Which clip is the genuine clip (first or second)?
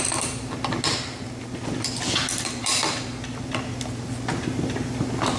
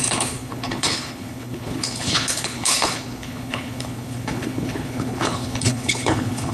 first